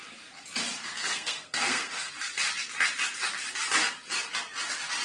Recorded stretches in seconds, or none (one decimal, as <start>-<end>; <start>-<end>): 0.0-0.8; 2.1-5.0